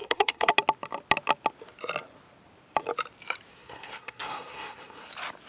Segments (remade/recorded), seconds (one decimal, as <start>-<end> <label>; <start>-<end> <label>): 0.0-0.5 remade; 0.5-3.5 recorded; 3.5-5.1 remade; 5.1-5.5 recorded